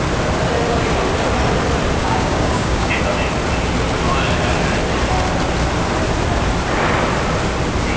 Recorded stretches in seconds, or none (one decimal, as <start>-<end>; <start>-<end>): 0.0-2.0; 2.9-8.0